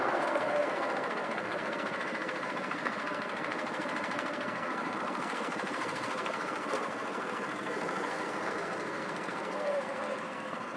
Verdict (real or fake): fake